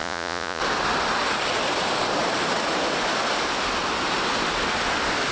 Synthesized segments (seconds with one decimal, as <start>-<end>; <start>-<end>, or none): 0.0-0.6